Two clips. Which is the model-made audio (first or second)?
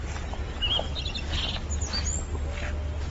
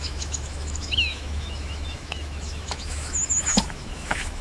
second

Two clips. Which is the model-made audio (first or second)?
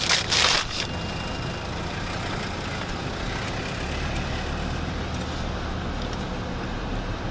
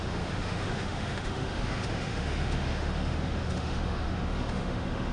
second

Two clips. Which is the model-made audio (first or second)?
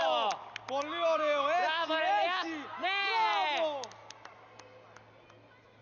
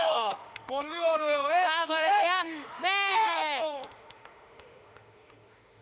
second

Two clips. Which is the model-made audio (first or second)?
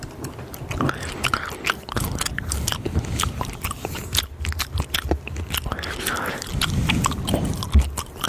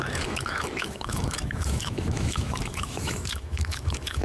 second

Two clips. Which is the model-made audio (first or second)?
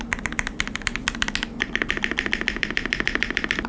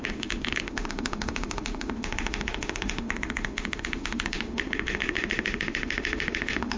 second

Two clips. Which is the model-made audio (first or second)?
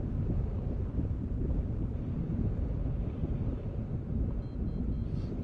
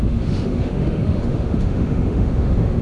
second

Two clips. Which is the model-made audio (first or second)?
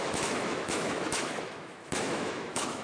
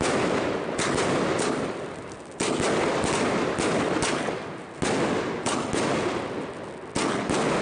first